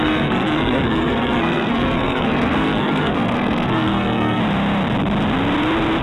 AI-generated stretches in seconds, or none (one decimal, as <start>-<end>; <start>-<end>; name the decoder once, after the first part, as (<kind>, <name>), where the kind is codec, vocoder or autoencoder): 0.0-4.4 (codec, SNAC)